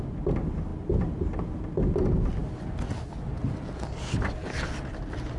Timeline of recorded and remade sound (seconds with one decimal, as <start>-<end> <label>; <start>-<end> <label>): 0.0-5.4 recorded